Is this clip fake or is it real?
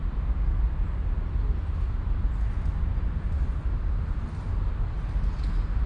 real